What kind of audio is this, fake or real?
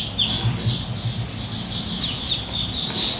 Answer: real